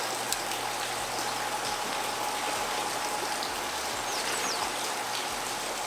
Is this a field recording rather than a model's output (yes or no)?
yes